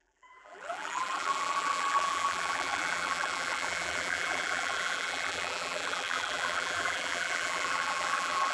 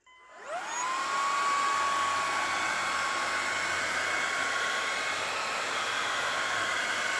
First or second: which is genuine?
second